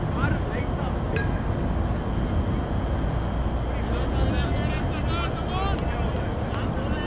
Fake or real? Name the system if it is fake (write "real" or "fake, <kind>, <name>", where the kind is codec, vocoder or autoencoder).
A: real